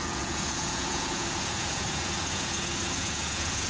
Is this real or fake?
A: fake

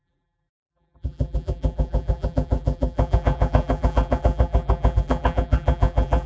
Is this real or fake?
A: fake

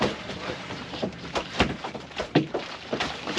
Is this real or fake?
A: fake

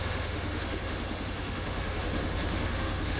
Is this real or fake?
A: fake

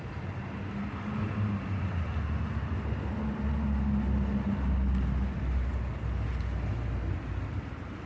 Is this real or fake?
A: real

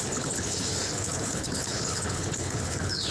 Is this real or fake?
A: fake